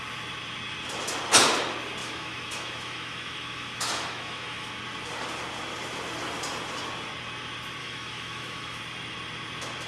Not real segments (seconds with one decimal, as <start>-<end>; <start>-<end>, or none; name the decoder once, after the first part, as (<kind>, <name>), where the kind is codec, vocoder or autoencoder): 2.0-4.7 (autoencoder, DAC-VAE); 7.8-8.8